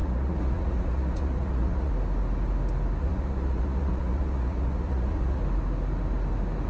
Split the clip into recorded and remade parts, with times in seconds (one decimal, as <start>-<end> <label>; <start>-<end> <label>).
0.0-1.9 remade; 1.9-3.0 recorded; 3.0-5.4 remade; 5.4-6.7 recorded